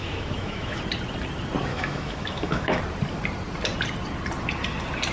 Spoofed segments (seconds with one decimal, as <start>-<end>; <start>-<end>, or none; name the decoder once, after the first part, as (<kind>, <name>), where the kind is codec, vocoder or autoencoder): 0.0-0.8 (autoencoder, DAC-VAE); 1.7-2.8

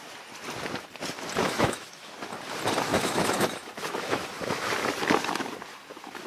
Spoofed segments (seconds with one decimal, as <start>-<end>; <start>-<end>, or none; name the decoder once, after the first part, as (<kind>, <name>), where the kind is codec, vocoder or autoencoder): 1.4-2.1 (autoencoder, DAC-VAE); 2.9-4.7

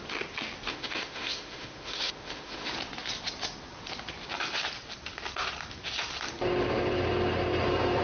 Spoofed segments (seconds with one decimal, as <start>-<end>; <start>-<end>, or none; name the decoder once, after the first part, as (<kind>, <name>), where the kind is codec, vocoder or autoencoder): 0.7-2.7 (autoencoder, DAC-VAE)